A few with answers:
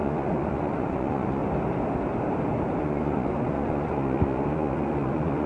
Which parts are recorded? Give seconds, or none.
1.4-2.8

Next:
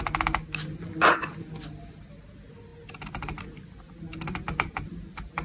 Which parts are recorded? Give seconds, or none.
0.0-5.4

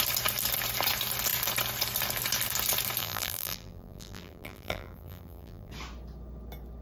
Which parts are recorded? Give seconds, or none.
0.0-3.0; 5.7-6.8

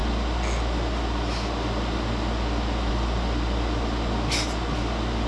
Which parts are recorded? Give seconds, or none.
0.0-5.3